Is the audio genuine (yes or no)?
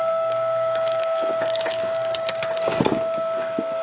no